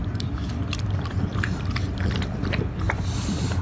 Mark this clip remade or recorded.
recorded